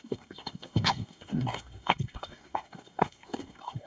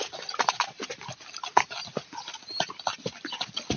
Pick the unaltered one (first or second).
second